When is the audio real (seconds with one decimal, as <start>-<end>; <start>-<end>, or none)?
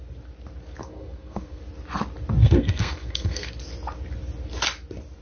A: 0.0-0.8; 1.6-2.4; 3.5-5.2